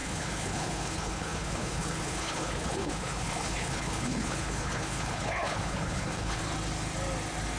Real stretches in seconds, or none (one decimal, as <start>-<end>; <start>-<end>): 6.4-7.6